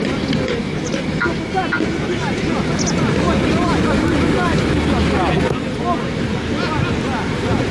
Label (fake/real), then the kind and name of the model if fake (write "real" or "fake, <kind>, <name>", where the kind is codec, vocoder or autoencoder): real